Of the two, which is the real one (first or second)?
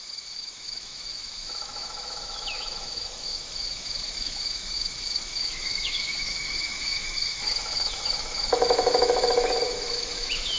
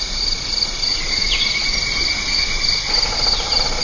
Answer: second